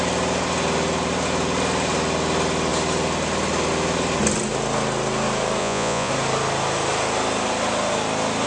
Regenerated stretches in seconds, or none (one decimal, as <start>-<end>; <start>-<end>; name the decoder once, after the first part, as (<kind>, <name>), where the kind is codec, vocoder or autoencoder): 5.6-6.1 (vocoder, Vocos)